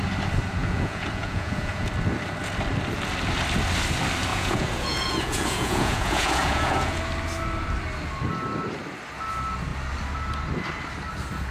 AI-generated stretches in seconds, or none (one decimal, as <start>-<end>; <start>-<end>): 0.6-1.9; 4.3-7.0